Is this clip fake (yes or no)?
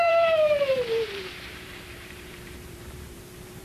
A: yes